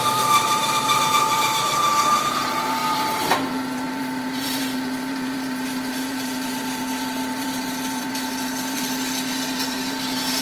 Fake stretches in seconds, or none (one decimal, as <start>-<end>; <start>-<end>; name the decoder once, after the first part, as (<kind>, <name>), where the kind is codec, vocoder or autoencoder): 0.0-10.4 (vocoder, BigVGAN v2)